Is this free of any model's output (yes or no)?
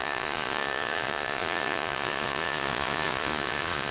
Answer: no